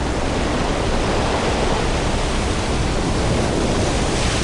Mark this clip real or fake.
real